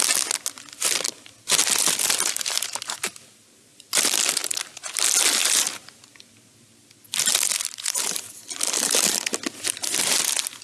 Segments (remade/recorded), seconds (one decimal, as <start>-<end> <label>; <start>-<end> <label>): 0.0-10.6 recorded

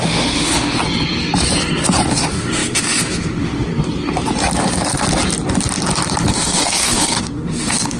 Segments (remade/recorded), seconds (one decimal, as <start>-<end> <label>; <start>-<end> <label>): 0.0-0.8 remade; 0.8-2.1 recorded; 2.1-3.7 remade; 3.7-6.3 recorded; 6.3-8.0 remade

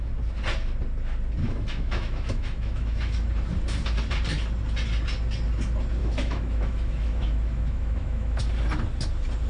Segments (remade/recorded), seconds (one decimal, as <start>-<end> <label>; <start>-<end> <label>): 0.0-1.4 recorded; 1.4-3.3 remade; 3.3-6.0 recorded; 6.0-8.4 remade; 8.4-9.5 recorded

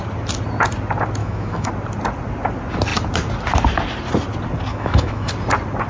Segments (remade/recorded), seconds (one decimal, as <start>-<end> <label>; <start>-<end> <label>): 0.0-1.2 recorded; 1.2-1.7 remade; 1.7-4.7 recorded; 4.7-5.3 remade; 5.3-5.9 recorded

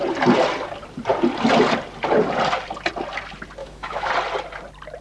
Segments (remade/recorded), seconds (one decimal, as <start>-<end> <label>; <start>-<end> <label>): 0.0-3.6 recorded; 3.6-4.1 remade; 4.1-5.0 recorded